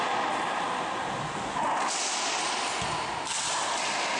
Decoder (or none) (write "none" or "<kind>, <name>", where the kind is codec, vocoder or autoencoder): none